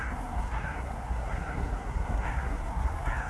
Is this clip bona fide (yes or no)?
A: no